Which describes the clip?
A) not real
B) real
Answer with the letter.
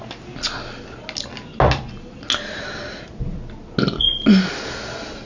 B